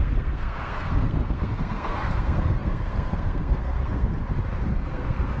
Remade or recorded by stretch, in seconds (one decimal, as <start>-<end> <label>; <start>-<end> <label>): 0.0-4.2 remade; 4.2-4.7 recorded; 4.7-5.4 remade